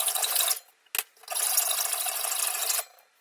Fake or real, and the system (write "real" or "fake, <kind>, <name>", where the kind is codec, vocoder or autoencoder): real